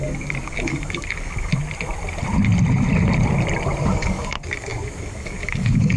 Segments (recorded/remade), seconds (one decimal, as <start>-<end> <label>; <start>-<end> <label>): 0.0-1.5 remade; 1.5-3.9 recorded; 3.9-6.0 remade